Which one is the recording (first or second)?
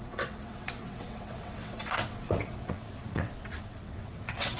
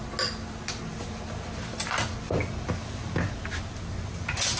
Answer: second